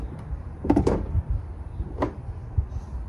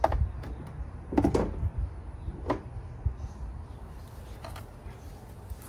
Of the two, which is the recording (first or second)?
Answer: second